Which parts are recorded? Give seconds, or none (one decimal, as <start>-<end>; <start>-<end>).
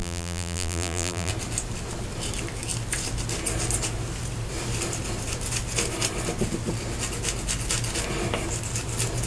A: 1.3-9.3